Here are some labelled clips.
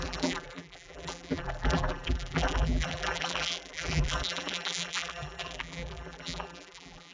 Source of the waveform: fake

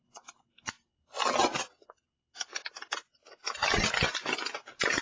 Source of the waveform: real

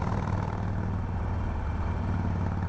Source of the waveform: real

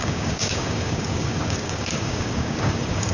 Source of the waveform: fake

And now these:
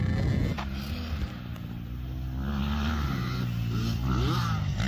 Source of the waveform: real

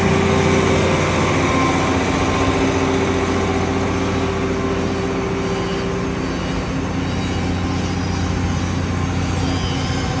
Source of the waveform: real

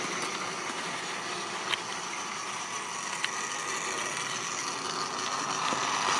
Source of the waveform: real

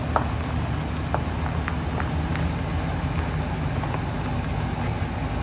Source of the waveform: real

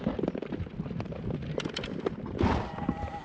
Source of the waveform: real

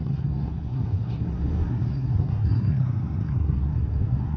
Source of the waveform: fake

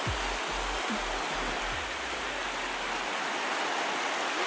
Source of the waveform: real